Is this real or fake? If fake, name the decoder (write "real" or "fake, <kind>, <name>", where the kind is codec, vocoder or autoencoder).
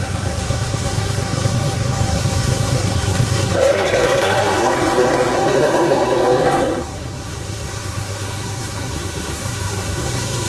fake, codec, SNAC